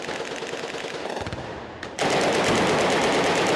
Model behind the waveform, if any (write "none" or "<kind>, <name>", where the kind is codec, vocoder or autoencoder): none